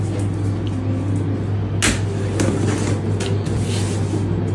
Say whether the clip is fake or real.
real